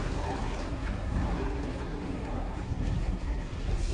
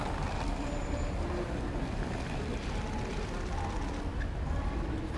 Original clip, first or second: second